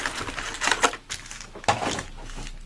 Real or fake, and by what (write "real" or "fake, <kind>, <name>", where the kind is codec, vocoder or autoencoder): real